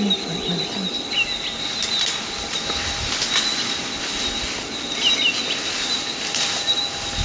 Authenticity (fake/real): real